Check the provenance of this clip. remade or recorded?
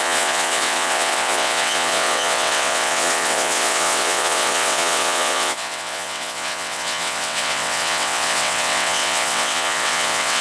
remade